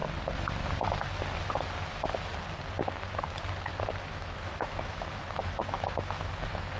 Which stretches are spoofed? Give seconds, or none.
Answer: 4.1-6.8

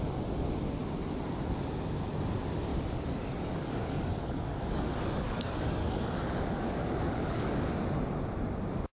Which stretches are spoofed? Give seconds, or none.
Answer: 2.7-7.7

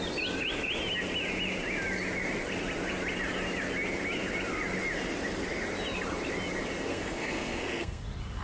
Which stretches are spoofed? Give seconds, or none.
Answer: 6.9-8.0

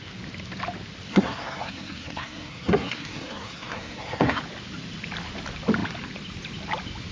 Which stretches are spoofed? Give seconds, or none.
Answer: 1.1-4.4

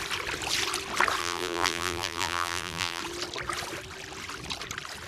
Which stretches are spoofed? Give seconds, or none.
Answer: 1.2-3.0

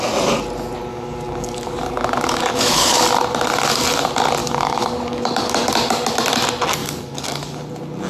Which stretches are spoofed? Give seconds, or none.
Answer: 0.9-3.0; 4.4-5.7; 6.8-7.6

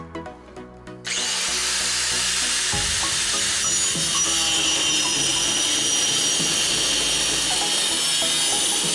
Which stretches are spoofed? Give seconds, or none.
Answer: none

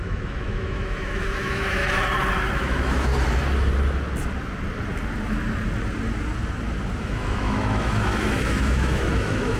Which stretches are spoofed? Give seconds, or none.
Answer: 0.0-1.8; 2.5-3.1; 7.0-9.6